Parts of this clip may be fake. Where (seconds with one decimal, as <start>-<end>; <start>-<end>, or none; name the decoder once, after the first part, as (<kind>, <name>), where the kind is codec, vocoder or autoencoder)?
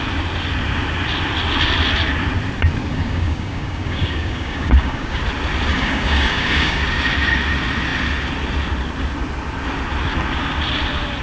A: 2.9-5.2 (codec, DAC); 5.7-6.8